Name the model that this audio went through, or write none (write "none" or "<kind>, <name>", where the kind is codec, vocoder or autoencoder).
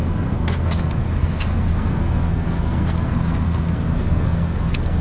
codec, SNAC